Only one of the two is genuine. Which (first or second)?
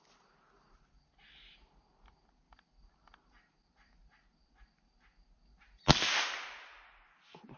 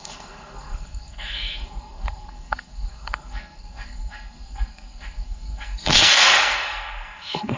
first